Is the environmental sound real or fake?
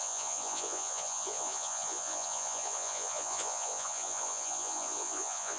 fake